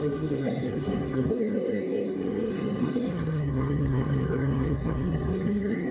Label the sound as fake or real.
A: fake